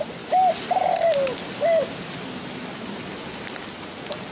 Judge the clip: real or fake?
real